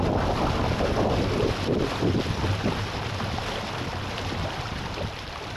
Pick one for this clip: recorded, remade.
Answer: recorded